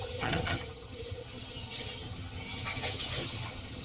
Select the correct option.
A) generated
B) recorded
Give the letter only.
A